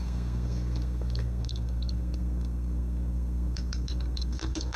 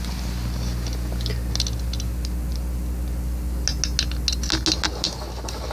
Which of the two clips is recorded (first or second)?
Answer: second